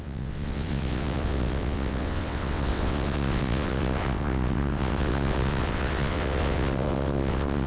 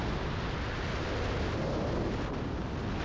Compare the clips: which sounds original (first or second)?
second